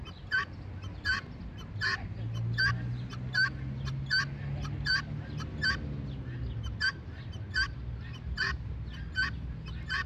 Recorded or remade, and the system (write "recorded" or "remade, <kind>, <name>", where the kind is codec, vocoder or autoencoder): recorded